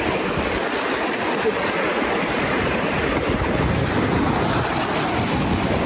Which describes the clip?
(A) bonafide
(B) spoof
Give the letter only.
A